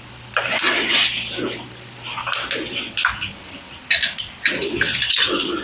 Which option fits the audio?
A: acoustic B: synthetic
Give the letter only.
A